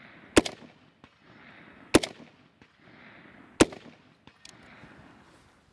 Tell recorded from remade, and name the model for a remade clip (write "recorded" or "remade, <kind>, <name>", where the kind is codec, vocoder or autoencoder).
recorded